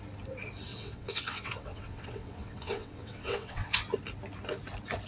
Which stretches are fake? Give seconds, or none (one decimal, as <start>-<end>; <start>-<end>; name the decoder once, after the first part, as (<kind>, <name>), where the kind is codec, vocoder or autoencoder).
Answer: 0.7-3.8 (vocoder, WaveNeXt)